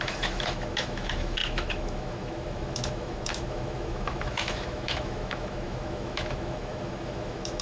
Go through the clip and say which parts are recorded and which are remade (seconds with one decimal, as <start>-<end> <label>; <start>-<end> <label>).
0.0-7.6 remade